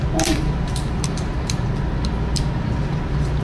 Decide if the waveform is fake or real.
real